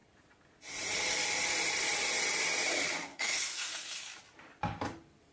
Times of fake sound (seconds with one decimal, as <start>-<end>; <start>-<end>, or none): 3.1-4.2